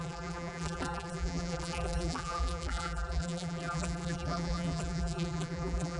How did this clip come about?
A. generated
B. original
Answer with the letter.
A